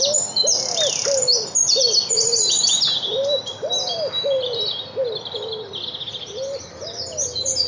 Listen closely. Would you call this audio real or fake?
real